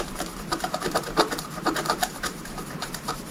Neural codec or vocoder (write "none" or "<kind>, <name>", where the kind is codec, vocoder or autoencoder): vocoder, BigVGAN v2